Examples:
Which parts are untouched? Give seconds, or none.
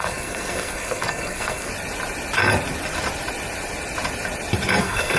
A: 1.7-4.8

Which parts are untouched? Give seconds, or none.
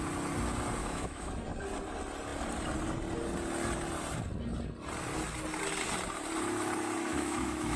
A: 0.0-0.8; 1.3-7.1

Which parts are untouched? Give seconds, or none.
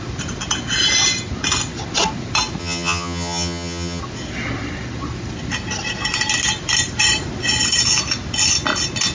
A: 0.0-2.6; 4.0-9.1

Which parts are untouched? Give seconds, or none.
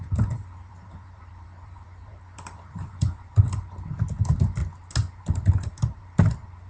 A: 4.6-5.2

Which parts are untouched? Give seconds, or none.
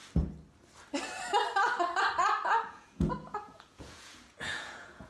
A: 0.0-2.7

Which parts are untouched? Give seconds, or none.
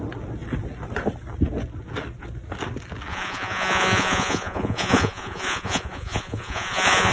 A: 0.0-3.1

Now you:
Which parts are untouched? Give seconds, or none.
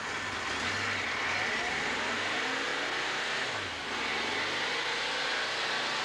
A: 0.0-6.0